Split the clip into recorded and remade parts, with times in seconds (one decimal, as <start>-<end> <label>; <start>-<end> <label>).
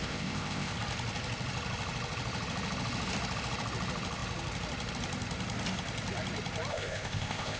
0.0-0.7 remade; 0.7-6.7 recorded; 6.7-7.6 remade